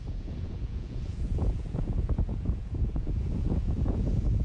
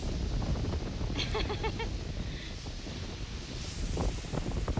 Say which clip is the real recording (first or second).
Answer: second